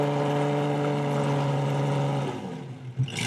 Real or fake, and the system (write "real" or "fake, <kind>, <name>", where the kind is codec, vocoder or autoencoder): real